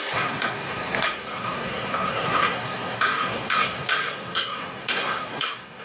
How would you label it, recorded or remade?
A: remade